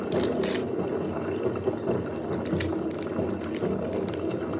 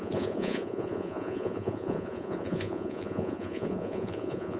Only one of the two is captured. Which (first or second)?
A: first